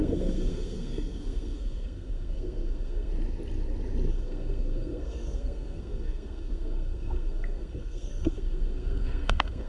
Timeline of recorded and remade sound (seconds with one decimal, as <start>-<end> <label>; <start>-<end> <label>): 0.0-3.1 remade; 3.1-4.1 recorded; 4.1-9.7 remade